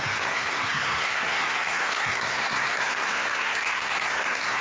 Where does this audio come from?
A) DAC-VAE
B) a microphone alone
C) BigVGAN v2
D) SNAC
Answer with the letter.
D